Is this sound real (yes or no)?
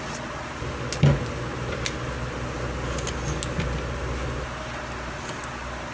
yes